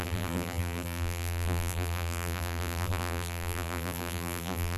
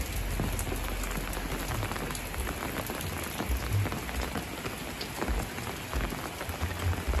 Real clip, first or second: second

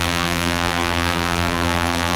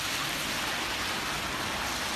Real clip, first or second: second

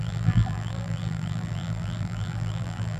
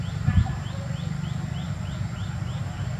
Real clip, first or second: second